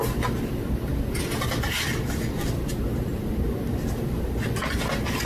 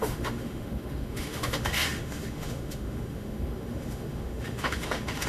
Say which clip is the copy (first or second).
second